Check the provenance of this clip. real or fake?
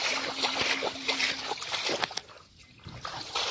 real